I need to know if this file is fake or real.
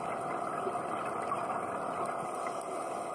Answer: fake